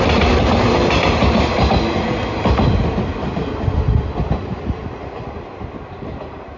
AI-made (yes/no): no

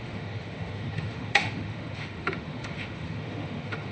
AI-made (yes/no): yes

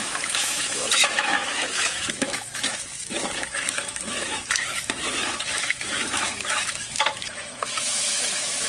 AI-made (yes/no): yes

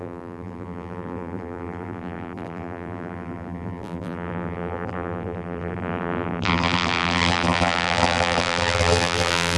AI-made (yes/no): yes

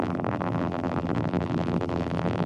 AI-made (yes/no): yes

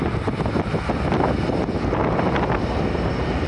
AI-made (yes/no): no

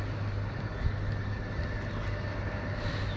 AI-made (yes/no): no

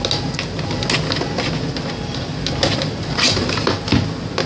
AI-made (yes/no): no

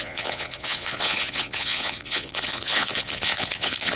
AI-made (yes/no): yes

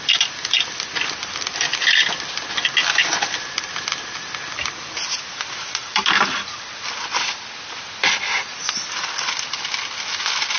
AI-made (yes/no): no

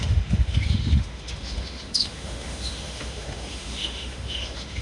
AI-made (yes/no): yes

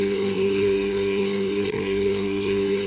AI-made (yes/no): yes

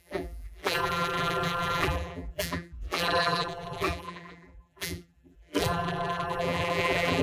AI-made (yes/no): yes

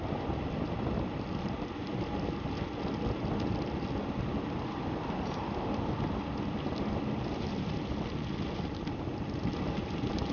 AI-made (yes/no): no